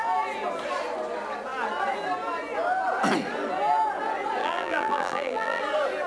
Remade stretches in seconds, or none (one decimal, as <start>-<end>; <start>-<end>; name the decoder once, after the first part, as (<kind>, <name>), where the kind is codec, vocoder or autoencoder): 4.4-5.6 (vocoder, BigVGAN v2)